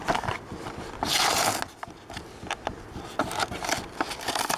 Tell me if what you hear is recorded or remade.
recorded